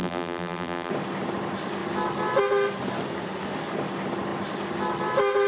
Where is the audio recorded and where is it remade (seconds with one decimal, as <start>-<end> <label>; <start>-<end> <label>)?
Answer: 0.0-0.9 remade; 0.9-5.5 recorded